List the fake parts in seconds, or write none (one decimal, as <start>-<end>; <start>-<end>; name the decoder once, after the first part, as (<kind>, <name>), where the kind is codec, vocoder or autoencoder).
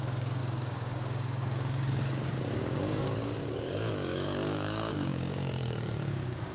0.0-6.5 (codec, DAC)